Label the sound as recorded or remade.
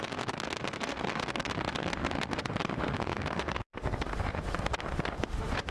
remade